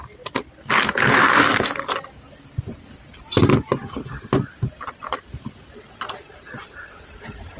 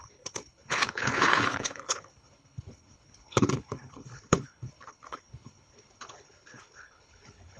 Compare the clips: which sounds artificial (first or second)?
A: second